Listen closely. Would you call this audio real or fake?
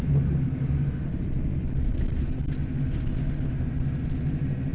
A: real